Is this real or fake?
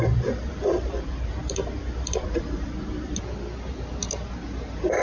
fake